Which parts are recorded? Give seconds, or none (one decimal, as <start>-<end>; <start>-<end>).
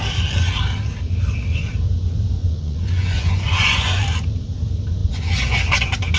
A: 0.0-2.4; 4.0-5.0; 5.6-6.2